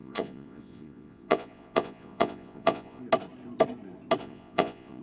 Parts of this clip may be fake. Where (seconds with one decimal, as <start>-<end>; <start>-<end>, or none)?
0.0-3.0; 4.2-5.0